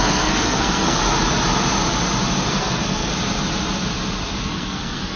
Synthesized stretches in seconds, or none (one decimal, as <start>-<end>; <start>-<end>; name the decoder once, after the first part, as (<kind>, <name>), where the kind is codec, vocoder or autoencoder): 0.0-1.0 (codec, SNAC); 2.5-3.1; 4.4-5.2